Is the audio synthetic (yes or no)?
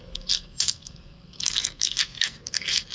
yes